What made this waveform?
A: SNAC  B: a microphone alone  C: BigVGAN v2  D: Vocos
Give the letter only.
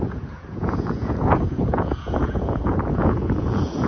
D